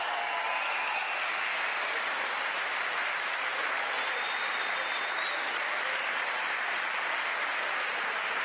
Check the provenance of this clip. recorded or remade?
recorded